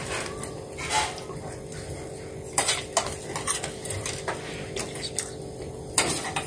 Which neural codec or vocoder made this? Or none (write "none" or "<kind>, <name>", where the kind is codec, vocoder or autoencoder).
none